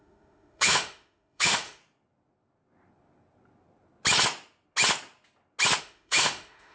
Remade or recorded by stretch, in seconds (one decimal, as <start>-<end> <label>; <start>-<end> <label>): 0.0-1.8 remade; 1.8-5.8 recorded; 5.8-6.7 remade